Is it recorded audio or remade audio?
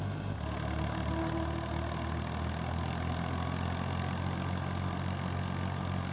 recorded